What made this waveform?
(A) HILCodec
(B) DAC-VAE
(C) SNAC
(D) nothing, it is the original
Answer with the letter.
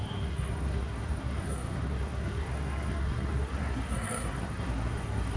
C